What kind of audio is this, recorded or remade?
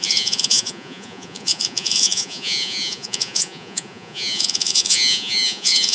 remade